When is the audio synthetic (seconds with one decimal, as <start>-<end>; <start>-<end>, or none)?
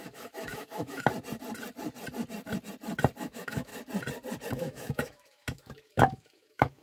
0.0-1.1; 3.2-3.7; 4.5-6.8